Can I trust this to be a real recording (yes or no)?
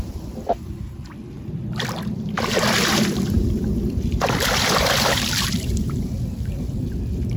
no